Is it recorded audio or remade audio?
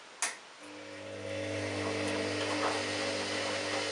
recorded